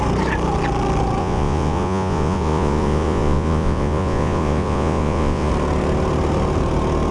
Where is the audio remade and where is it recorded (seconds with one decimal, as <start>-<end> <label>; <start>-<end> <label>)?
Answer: 0.0-1.2 recorded; 1.2-5.5 remade; 5.5-7.1 recorded